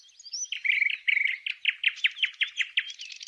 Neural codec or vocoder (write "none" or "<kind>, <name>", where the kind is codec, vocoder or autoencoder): none